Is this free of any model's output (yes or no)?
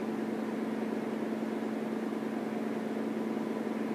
yes